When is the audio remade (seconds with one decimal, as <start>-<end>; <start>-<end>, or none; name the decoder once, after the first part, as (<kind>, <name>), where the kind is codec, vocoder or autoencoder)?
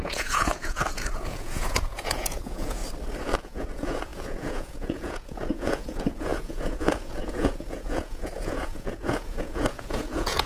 0.0-2.8 (vocoder, Vocos); 3.4-10.5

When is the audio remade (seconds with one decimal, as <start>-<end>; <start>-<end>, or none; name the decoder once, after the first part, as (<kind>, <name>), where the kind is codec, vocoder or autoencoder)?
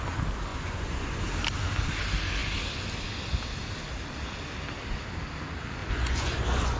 0.5-1.2 (vocoder, Vocos); 5.8-6.8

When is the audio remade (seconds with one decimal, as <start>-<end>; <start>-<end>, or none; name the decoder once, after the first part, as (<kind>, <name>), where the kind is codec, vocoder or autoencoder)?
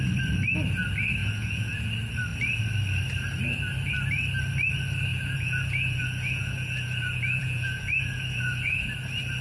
1.2-1.9 (vocoder, Vocos); 5.1-8.9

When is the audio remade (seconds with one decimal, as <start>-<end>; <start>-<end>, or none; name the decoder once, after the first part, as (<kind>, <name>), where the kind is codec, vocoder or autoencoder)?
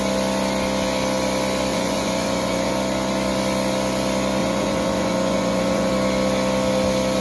1.7-2.7 (vocoder, Vocos); 4.4-5.9